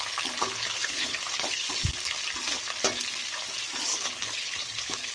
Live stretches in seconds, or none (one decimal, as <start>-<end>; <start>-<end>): 0.0-0.4; 1.7-3.9

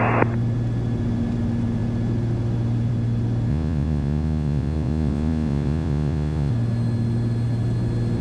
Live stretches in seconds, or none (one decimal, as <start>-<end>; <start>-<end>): 0.0-3.5; 6.5-8.2

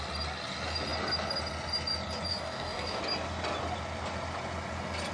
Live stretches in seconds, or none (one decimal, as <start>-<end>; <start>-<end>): 0.0-2.3; 3.0-5.1

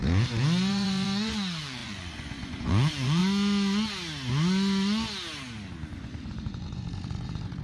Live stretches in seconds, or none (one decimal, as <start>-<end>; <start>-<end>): 0.0-0.7; 3.2-5.9